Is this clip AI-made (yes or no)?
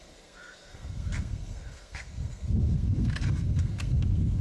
yes